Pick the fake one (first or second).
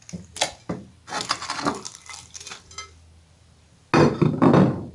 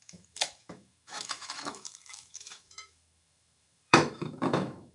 second